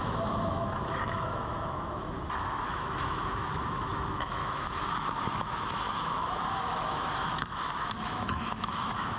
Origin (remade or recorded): remade